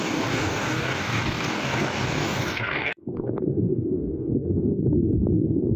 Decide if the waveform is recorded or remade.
remade